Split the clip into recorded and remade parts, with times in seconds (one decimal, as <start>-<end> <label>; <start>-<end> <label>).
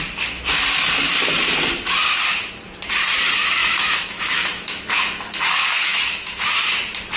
0.0-3.6 recorded; 3.6-6.6 remade; 6.6-7.2 recorded